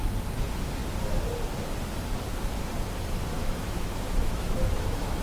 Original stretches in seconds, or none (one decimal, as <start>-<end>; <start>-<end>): 0.0-3.4